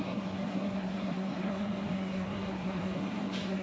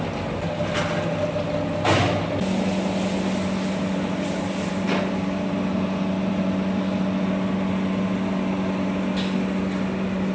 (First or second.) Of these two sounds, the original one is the second